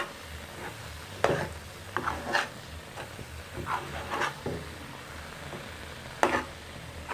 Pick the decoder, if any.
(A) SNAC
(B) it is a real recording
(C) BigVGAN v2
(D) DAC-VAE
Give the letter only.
C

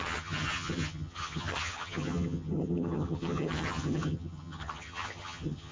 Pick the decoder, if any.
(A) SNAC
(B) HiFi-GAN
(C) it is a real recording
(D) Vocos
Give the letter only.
B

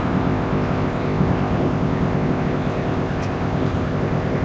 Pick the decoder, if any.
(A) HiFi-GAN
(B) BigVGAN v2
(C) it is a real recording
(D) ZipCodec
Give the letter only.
D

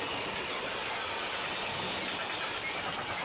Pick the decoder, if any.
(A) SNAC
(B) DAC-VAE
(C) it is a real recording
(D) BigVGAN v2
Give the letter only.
C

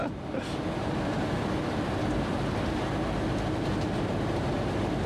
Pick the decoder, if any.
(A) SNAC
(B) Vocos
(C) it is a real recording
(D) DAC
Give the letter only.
C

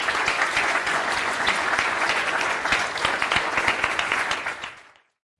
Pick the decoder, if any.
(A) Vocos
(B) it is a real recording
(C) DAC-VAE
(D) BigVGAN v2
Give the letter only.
A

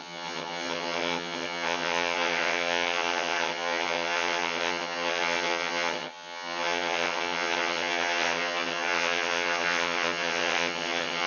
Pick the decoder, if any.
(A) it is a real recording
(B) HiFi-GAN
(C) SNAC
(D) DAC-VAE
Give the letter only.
B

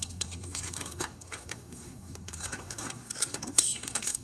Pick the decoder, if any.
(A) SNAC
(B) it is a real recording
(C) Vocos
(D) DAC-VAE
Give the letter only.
A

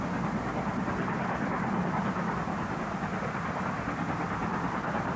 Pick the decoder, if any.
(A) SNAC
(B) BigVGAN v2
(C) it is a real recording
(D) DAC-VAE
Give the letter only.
C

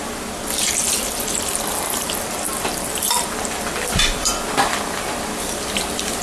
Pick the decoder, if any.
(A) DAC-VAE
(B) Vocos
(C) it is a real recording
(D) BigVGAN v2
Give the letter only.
D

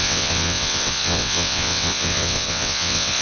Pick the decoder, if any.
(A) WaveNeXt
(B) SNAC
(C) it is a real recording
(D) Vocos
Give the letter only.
A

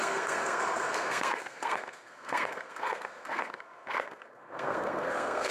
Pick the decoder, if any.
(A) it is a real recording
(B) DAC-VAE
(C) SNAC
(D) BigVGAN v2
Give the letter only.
C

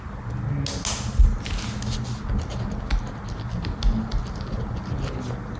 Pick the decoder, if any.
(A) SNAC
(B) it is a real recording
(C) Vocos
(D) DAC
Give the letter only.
B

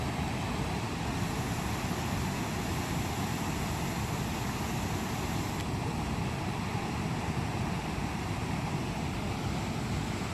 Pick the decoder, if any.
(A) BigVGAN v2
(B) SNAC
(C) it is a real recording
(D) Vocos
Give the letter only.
C